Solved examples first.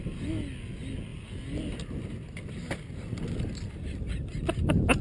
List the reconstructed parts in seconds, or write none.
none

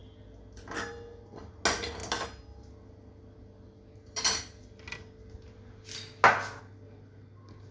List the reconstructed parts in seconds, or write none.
none